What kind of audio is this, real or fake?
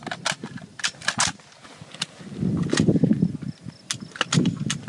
real